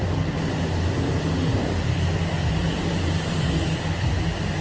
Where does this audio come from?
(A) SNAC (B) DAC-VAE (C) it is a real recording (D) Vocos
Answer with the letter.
C